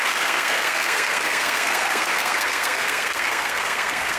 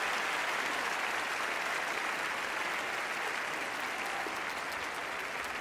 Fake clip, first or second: first